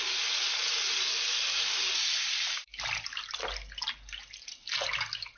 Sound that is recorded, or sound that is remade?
recorded